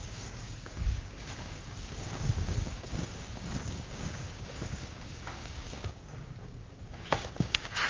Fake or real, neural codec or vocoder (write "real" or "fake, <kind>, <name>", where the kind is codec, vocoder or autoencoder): fake, codec, DAC